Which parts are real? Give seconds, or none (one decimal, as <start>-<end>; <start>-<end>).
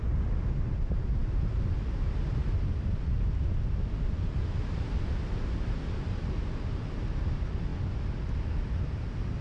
0.0-7.7; 8.5-9.4